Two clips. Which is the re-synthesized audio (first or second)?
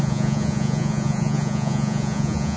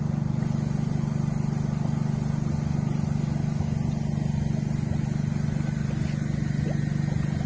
first